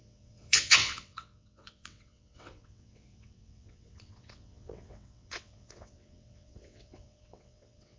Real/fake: fake